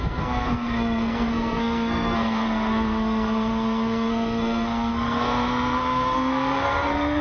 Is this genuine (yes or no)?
no